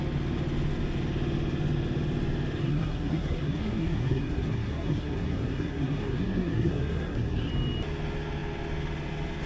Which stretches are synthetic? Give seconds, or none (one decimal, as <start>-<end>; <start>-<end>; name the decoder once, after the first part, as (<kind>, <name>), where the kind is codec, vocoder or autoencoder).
2.6-7.5 (codec, SNAC)